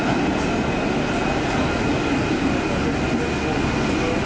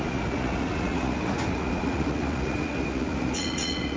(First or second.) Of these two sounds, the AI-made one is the second